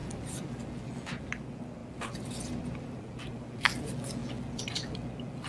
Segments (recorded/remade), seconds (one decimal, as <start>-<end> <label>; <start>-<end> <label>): 0.0-5.5 recorded